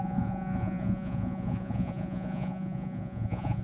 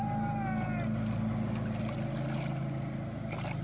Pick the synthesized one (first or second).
first